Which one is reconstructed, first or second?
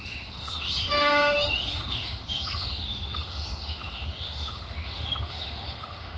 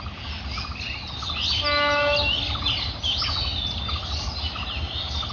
first